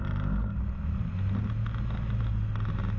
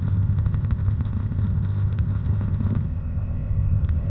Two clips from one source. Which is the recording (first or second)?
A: first